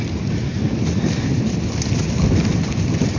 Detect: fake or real real